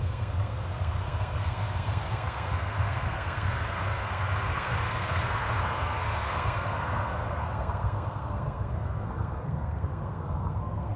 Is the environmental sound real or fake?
fake